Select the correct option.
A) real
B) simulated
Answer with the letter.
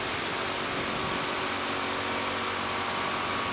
A